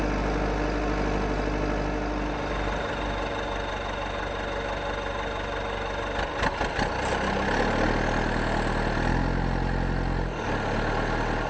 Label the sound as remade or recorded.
recorded